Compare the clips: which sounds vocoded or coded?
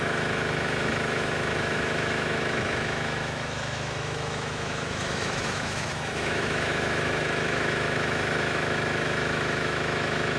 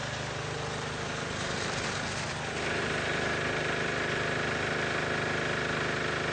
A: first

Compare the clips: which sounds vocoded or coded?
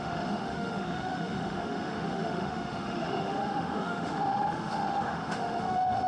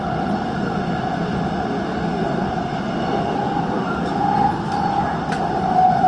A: first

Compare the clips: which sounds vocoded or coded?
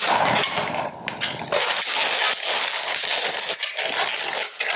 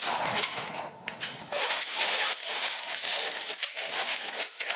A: second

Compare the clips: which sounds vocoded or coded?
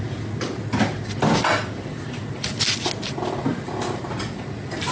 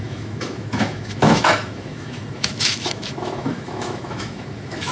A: second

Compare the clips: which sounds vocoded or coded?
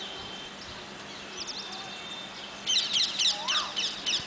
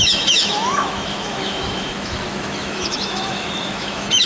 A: second